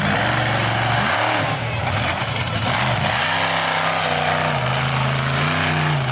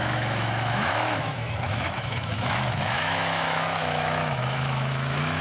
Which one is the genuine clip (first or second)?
first